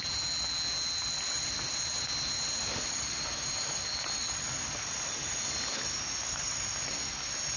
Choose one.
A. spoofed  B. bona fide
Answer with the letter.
B